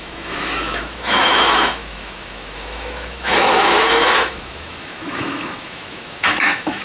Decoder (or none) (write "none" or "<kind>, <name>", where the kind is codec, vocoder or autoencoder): autoencoder, DAC-VAE